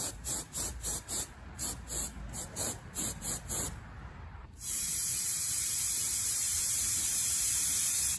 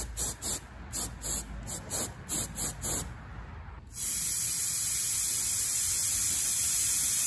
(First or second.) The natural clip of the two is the second